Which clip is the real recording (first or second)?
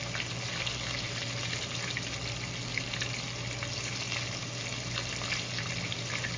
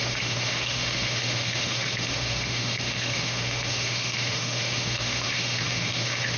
first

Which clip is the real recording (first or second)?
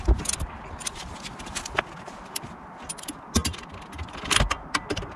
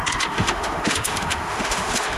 first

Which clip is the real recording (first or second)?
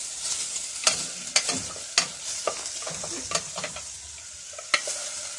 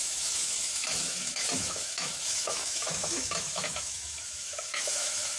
first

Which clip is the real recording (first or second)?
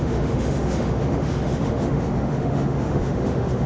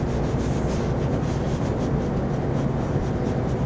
second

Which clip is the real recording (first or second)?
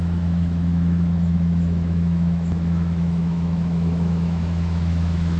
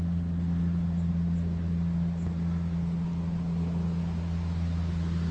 second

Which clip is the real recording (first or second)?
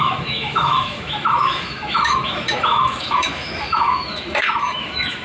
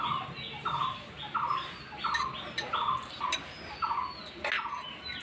second